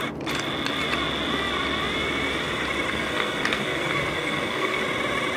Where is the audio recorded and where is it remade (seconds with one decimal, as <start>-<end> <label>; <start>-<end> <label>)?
0.0-2.9 recorded; 2.9-4.8 remade; 4.8-5.4 recorded